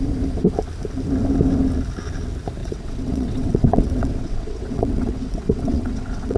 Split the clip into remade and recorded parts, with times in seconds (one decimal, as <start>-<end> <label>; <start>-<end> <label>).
0.0-2.6 recorded; 2.6-6.4 remade